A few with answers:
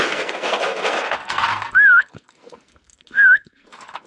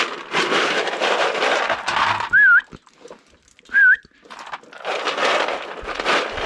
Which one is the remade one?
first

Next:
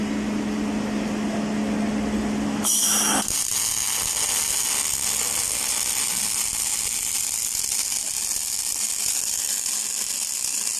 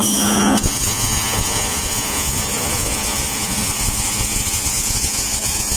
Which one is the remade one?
second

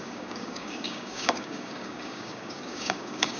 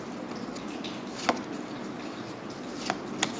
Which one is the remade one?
first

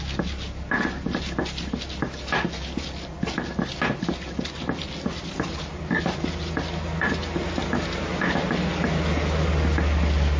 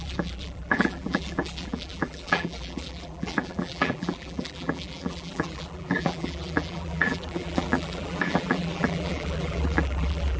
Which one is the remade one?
second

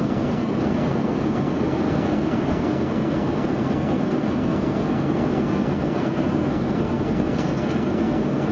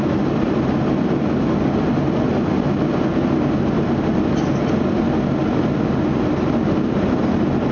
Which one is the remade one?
first